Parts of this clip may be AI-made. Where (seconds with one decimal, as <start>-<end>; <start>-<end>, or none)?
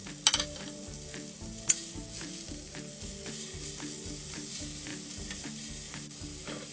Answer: none